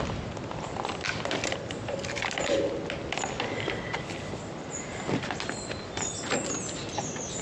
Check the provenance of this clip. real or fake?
real